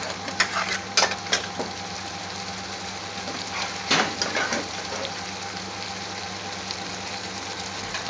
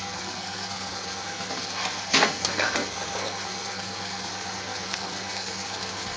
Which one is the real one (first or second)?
first